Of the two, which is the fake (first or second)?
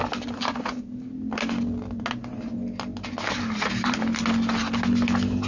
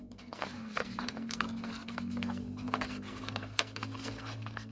second